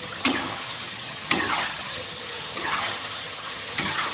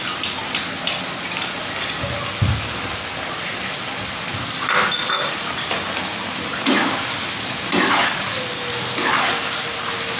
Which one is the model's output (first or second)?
first